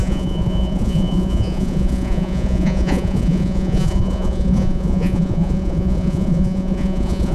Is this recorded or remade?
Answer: remade